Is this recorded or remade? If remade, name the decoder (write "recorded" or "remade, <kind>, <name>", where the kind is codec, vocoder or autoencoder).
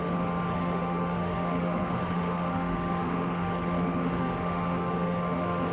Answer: remade, autoencoder, DAC-VAE